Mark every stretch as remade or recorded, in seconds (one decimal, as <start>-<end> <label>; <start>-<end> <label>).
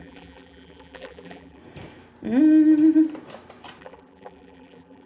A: 0.0-1.6 remade; 1.6-3.8 recorded; 3.8-5.1 remade